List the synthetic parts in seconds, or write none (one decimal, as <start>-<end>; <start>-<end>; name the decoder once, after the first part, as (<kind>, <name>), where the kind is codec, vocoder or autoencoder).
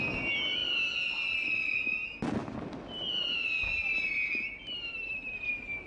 none